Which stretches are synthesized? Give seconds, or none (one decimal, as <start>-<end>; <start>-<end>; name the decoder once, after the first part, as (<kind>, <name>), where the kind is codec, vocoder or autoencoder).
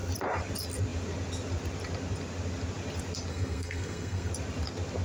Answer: 3.3-4.3 (codec, SNAC)